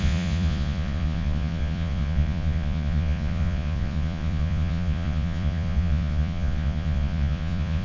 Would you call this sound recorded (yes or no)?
no